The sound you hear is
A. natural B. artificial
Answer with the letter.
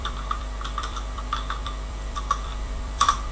B